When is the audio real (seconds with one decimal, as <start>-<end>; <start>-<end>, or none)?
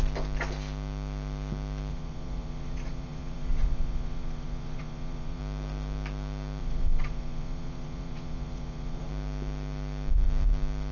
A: 0.0-1.9; 5.4-6.6; 9.1-10.9